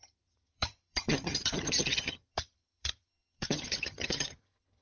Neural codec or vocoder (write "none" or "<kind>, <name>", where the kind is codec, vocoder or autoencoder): vocoder, HiFi-GAN